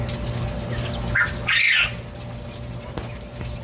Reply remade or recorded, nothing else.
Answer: recorded